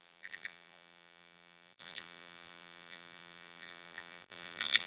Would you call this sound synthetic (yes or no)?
yes